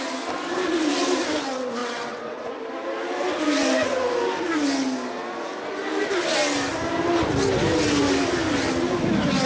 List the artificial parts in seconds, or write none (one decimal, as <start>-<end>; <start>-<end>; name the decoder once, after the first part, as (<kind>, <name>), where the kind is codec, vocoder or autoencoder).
1.8-2.4 (vocoder, WaveNeXt)